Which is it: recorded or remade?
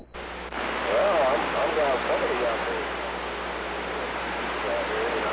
recorded